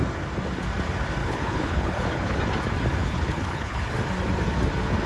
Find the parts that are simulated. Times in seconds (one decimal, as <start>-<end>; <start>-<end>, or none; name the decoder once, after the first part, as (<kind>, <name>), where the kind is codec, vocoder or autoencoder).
1.2-2.4 (codec, HILCodec); 3.0-3.9